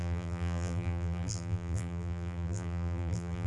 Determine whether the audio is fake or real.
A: fake